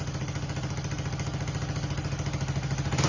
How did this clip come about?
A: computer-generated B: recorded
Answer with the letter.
B